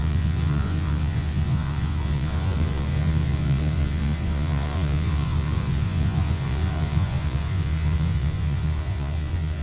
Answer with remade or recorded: remade